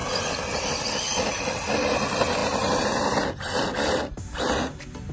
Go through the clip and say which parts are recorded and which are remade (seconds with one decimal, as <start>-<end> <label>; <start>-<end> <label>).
0.0-5.1 recorded